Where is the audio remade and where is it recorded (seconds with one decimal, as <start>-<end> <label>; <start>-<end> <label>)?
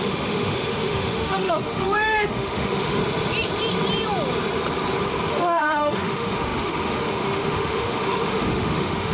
0.0-3.0 remade; 3.0-5.3 recorded; 5.3-9.1 remade